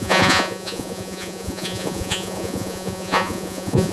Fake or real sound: fake